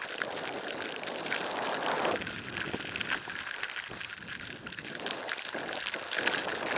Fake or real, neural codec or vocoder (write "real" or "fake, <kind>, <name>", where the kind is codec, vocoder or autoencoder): real